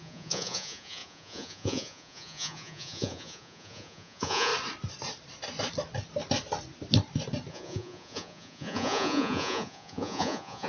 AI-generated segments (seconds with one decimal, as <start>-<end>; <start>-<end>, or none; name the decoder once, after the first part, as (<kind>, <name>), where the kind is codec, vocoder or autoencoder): 0.0-4.5 (vocoder, Vocos); 7.5-10.7